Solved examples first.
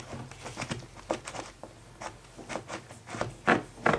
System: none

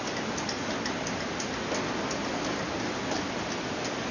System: none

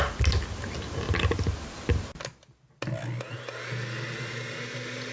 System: none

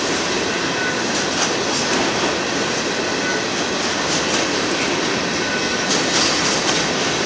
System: none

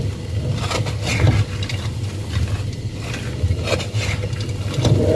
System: none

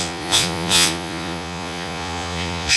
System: vocoder, Vocos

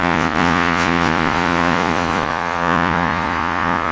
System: vocoder, Vocos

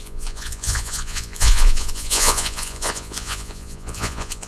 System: vocoder, Vocos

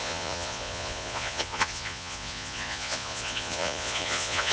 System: vocoder, Vocos